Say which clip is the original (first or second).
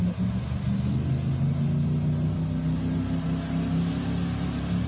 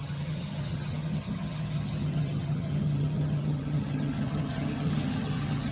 first